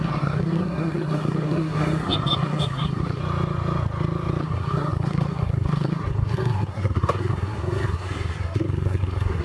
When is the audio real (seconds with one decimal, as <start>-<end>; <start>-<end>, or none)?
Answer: 3.2-4.4

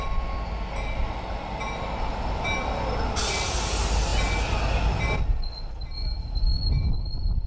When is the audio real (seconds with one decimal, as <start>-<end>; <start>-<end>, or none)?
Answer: 0.0-7.5